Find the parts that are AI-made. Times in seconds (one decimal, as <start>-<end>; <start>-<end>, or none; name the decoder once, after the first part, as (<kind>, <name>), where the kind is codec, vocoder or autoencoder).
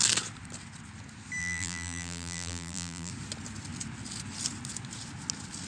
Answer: 1.4-3.1 (vocoder, BigVGAN v2)